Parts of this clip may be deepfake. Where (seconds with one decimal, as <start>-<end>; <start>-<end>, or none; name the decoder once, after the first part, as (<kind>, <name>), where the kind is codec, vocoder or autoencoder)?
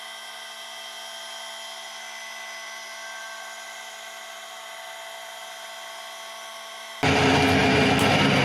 7.6-8.4 (vocoder, BigVGAN v2)